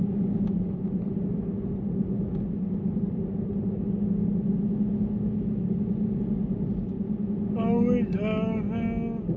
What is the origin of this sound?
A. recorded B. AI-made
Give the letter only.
A